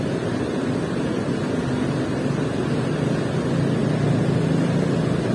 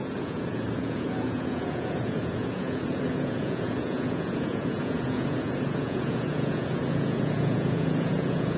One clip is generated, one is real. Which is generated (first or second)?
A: second